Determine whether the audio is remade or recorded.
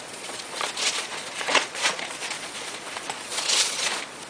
remade